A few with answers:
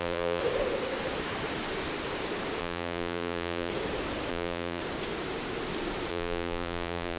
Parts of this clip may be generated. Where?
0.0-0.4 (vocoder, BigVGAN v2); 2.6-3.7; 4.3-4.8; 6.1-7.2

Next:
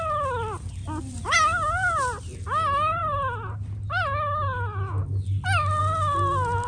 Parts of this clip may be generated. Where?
none

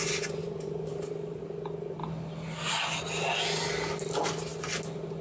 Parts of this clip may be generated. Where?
0.4-1.4 (vocoder, BigVGAN v2)